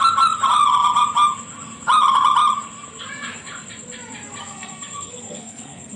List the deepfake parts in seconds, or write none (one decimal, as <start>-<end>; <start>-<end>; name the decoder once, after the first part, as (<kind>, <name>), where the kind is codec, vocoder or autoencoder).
4.4-6.0 (codec, SNAC)